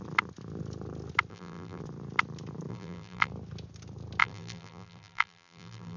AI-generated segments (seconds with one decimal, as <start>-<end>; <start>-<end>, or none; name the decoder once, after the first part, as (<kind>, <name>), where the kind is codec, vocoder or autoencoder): 1.3-1.8 (vocoder, BigVGAN v2); 2.7-3.3; 4.2-6.0